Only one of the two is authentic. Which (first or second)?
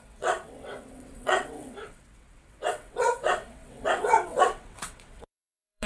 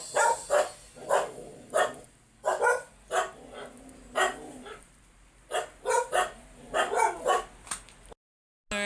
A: second